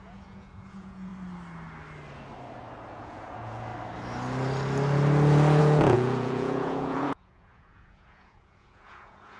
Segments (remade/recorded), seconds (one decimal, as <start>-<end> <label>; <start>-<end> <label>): 0.0-1.1 remade; 1.1-2.9 recorded; 2.9-3.7 remade; 3.7-5.6 recorded; 5.6-9.4 remade